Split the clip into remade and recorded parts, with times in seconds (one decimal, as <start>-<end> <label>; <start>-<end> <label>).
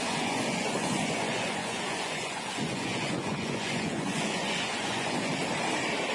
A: 0.0-5.3 remade; 5.3-6.1 recorded